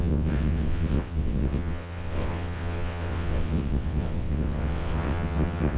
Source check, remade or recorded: remade